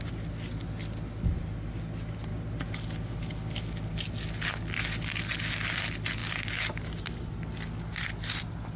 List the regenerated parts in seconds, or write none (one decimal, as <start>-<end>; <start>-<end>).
none